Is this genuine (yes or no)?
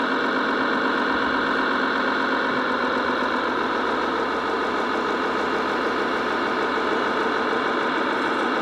yes